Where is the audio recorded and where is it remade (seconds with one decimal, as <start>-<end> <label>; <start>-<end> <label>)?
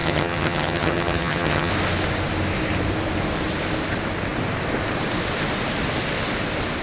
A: 0.0-1.7 remade; 1.7-6.8 recorded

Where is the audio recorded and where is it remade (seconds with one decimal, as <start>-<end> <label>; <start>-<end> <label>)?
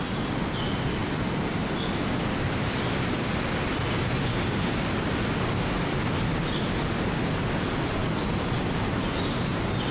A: 0.0-9.9 recorded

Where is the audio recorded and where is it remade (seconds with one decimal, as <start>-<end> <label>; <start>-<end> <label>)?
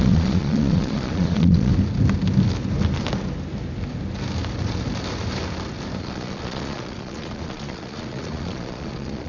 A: 0.0-1.7 remade; 1.7-6.0 recorded; 6.0-9.3 remade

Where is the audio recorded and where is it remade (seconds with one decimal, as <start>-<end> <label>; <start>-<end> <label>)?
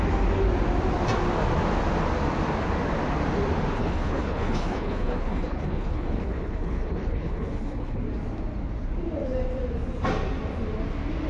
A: 0.0-3.8 recorded; 3.8-8.0 remade; 8.0-11.3 recorded